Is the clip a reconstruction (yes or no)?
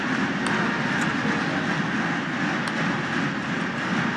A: no